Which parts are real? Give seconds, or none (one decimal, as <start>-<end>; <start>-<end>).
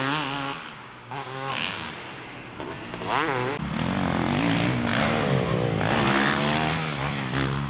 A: 0.0-0.7; 1.9-7.7